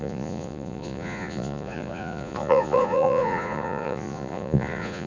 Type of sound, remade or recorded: remade